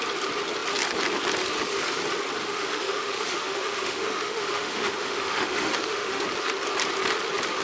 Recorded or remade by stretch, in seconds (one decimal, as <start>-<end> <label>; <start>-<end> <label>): 0.0-2.4 recorded; 2.4-6.2 remade; 6.2-7.6 recorded